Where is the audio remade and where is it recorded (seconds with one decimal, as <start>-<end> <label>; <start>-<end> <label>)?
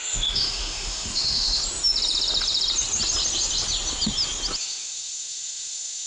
0.0-1.6 remade; 1.6-4.6 recorded; 4.6-6.1 remade